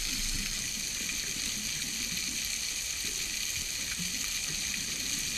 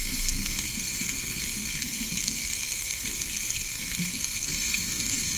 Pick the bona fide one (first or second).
first